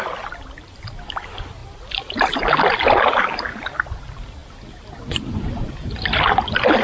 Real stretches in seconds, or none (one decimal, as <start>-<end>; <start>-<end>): 0.0-6.8